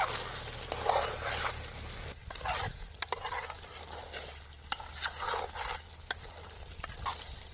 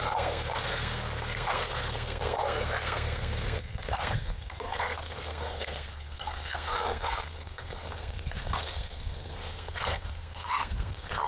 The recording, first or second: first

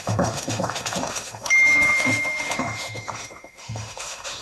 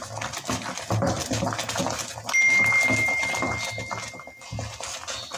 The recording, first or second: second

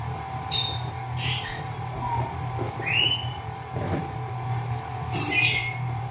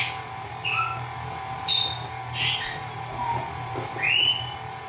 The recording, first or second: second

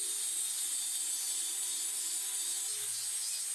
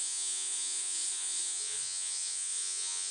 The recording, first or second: first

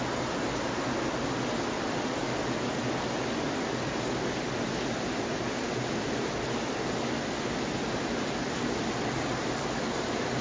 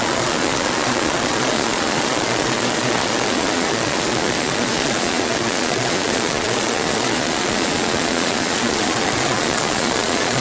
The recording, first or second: first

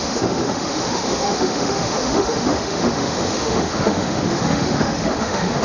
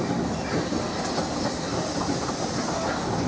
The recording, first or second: second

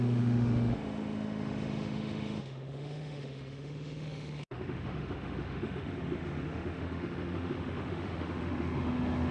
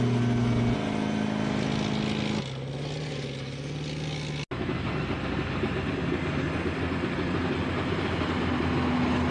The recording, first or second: second